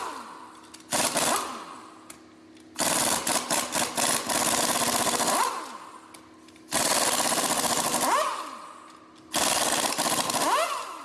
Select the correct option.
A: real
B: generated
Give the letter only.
A